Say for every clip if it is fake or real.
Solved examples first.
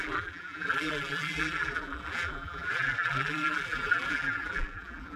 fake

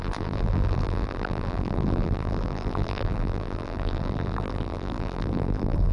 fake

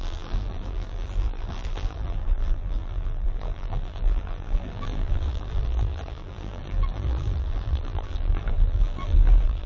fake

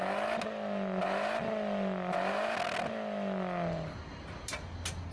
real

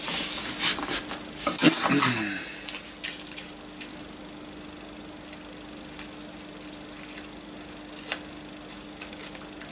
real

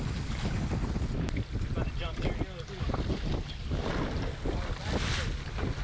real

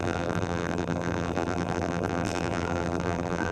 fake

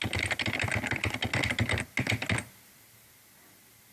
real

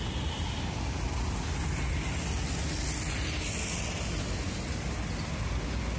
real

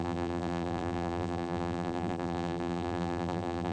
fake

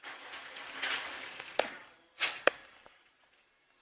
real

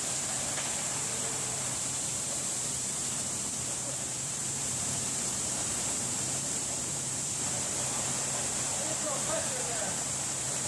fake